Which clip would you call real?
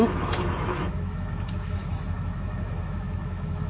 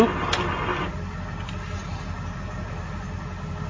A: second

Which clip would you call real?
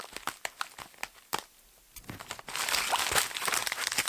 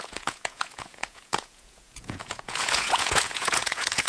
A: first